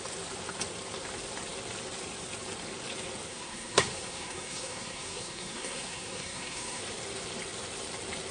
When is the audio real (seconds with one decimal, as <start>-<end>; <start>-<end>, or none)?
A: 0.0-3.3; 6.8-8.3